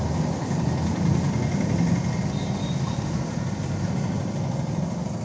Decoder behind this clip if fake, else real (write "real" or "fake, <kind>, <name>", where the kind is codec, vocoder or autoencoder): real